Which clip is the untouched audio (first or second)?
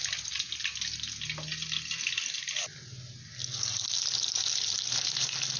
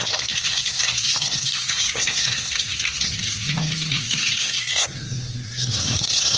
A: first